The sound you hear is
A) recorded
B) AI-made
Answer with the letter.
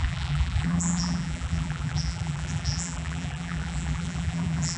B